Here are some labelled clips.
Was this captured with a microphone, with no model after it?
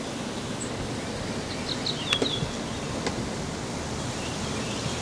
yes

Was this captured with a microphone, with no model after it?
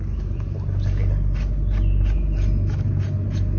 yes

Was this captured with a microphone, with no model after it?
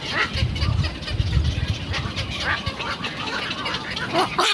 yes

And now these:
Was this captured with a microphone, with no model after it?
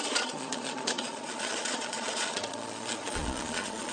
no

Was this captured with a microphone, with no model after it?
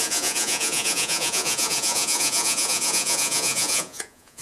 no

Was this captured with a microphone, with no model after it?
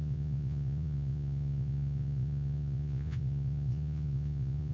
no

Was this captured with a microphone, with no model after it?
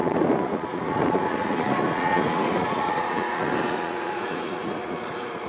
no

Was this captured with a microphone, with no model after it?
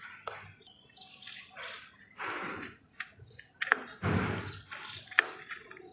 yes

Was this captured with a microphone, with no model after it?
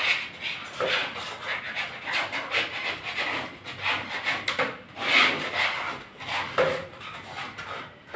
yes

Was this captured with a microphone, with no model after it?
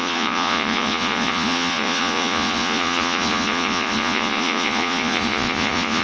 no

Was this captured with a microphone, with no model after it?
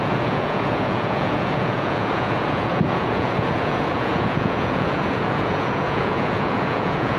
no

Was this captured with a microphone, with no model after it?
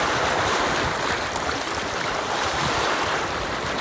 yes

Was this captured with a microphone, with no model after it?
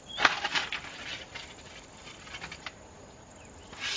yes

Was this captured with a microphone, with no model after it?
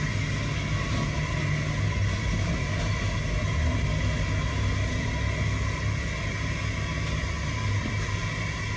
yes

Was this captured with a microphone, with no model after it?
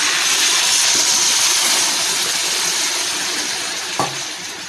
yes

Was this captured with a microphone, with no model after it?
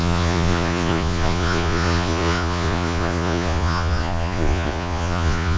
no